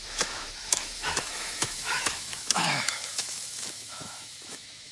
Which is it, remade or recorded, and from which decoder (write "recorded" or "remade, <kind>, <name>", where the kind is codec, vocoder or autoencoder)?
remade, autoencoder, DAC-VAE